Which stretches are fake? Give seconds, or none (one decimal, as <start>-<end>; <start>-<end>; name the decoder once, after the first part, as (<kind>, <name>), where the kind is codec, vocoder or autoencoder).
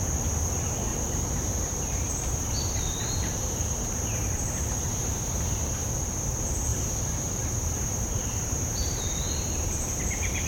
0.9-5.9 (vocoder, BigVGAN v2); 6.7-10.0